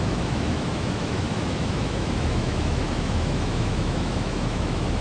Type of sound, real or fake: fake